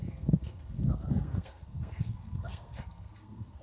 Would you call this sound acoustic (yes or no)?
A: no